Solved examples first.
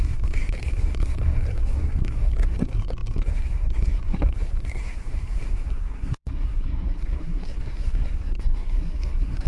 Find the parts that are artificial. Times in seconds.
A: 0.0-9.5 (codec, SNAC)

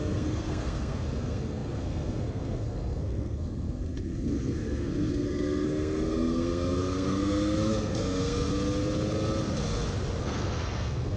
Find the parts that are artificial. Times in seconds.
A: 0.0-8.5 (codec, SNAC); 10.2-11.2

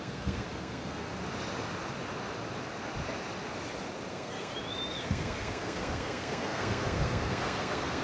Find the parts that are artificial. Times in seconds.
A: 0.0-1.1 (codec, SNAC); 4.1-4.5; 5.0-8.0

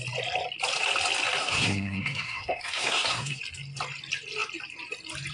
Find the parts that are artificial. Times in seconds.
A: 1.4-3.4 (codec, SNAC)

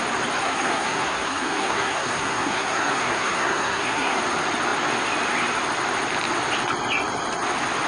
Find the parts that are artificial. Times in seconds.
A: 0.4-4.2 (codec, SNAC)

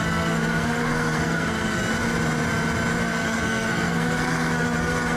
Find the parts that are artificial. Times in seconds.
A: 0.0-1.8 (codec, SNAC); 3.0-5.2